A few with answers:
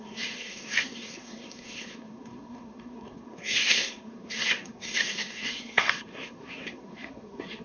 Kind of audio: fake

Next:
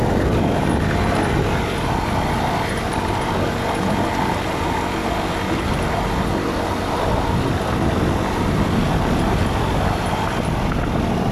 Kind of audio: real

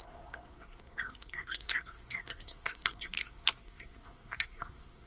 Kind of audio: fake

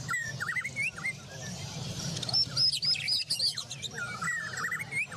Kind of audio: real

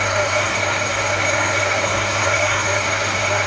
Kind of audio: fake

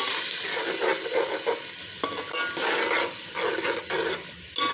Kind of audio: real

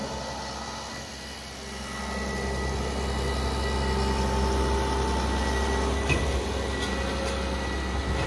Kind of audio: real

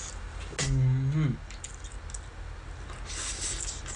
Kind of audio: real